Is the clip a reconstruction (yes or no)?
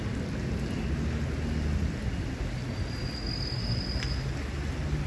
no